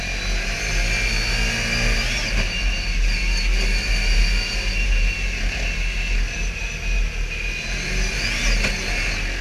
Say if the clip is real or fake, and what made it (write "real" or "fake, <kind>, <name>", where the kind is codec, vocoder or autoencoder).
real